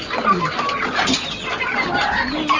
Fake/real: real